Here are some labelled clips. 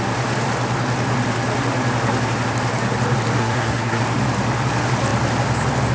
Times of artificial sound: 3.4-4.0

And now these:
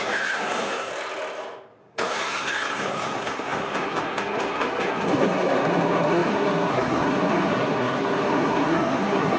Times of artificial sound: 0.0-0.9; 1.8-9.4

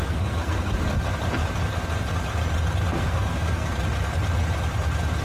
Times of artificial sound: 0.0-0.7; 2.9-3.7

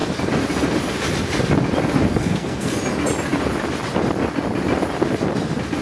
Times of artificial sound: 2.1-2.8

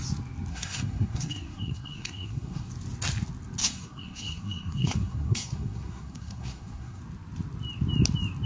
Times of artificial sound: 0.5-2.7; 3.6-7.0